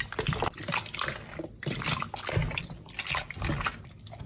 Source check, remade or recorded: remade